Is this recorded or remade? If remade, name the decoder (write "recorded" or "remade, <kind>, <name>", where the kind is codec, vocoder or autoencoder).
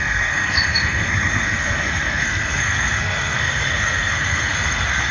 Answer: remade, codec, SNAC